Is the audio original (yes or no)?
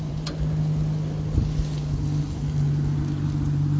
yes